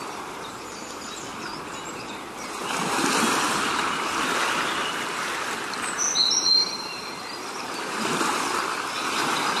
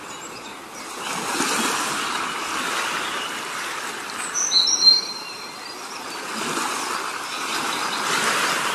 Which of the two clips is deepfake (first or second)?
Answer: first